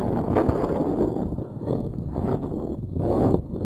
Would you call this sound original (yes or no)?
no